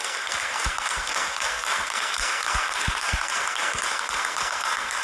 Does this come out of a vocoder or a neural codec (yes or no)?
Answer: yes